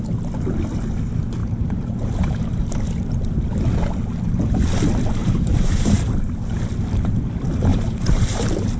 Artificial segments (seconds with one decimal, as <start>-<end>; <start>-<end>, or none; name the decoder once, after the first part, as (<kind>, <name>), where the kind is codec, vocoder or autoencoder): 1.4-3.1 (vocoder, BigVGAN v2); 5.2-6.3; 7.7-8.8